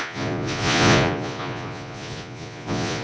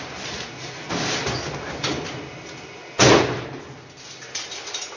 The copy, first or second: first